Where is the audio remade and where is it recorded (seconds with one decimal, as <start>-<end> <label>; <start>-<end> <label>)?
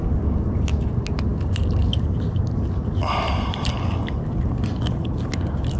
0.0-5.8 recorded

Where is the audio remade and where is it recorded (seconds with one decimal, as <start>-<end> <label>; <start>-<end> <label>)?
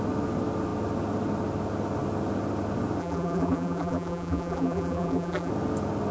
0.0-3.0 recorded; 3.0-5.5 remade; 5.5-6.1 recorded